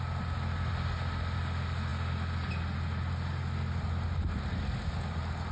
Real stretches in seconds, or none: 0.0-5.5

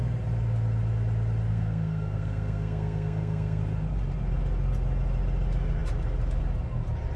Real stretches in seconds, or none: 0.0-1.5; 3.6-7.2